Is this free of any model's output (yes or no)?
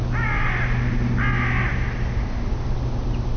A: yes